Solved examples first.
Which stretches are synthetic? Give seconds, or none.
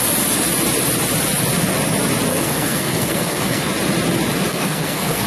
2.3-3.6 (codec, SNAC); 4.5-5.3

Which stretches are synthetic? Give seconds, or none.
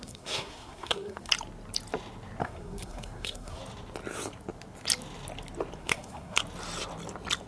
0.0-1.3 (codec, SNAC); 2.4-3.6; 5.8-6.4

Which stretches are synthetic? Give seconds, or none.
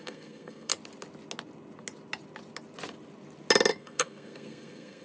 0.0-0.7 (codec, SNAC); 3.7-5.0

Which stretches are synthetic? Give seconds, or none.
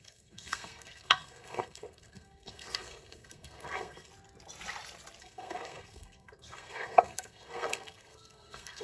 0.0-4.1 (codec, SNAC); 5.2-8.8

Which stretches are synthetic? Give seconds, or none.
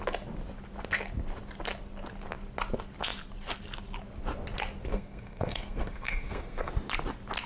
4.9-6.7 (codec, SNAC)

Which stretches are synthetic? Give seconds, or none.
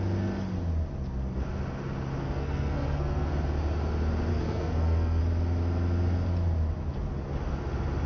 2.2-3.3 (codec, SNAC); 4.3-5.2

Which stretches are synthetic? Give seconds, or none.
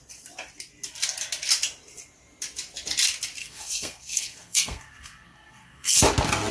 3.4-6.0 (codec, SNAC)